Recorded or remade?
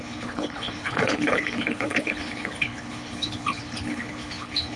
remade